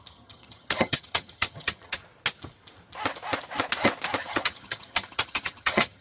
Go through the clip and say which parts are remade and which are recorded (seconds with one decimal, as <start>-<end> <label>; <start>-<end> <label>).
0.0-2.0 remade; 2.0-4.2 recorded; 4.2-6.0 remade